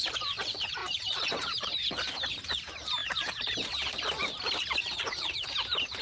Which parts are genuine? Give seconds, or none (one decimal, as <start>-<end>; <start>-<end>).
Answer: none